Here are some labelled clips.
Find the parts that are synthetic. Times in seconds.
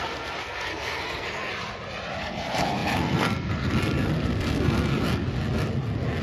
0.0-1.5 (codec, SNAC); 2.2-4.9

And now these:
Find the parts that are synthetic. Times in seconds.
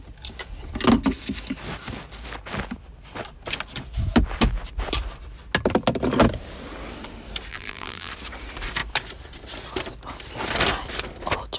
7.5-8.1 (vocoder, BigVGAN v2)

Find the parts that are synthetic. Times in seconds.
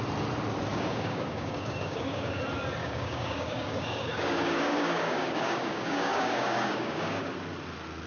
0.7-2.4 (codec, DAC); 2.8-7.3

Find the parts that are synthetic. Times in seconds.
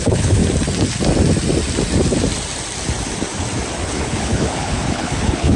0.0-0.4 (codec, HILCodec); 3.8-5.6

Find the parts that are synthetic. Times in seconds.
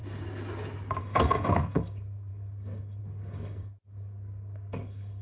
1.0-5.2 (codec, SNAC)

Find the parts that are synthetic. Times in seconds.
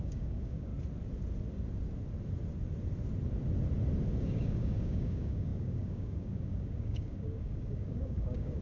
0.0-0.7 (codec, DAC); 4.2-8.6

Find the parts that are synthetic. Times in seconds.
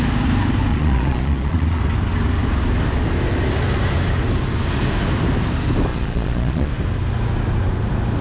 0.7-1.8 (vocoder, Vocos); 5.9-6.7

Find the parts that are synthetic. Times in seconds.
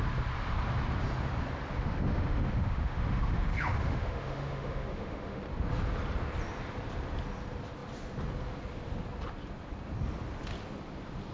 1.7-5.4 (autoencoder, DAC-VAE)